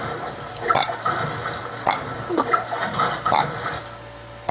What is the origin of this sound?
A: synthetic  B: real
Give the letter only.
B